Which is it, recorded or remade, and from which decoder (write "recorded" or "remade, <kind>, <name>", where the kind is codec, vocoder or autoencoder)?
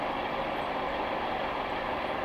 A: remade, vocoder, BigVGAN v2